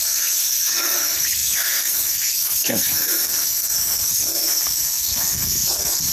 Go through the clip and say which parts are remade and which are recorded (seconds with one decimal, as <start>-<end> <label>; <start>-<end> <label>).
0.0-6.1 remade